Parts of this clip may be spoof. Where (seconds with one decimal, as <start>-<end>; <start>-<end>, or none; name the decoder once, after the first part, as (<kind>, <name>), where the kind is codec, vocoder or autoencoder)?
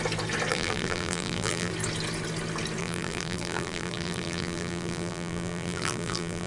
0.5-1.7 (vocoder, BigVGAN v2); 2.8-6.5